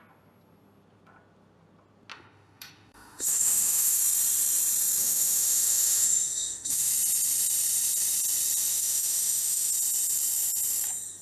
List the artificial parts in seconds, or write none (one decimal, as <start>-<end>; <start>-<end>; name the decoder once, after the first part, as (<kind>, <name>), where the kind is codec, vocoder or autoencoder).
2.1-4.0 (autoencoder, DAC-VAE); 5.0-6.9; 8.7-9.7